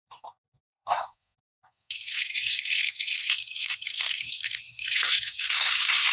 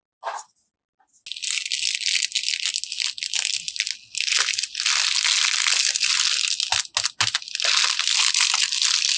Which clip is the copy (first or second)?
first